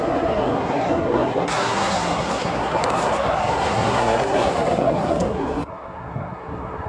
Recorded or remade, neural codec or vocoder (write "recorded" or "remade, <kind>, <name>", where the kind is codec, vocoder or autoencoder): remade, codec, SNAC